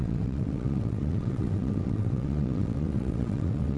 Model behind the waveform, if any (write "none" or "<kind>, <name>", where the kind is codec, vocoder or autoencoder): vocoder, WaveNeXt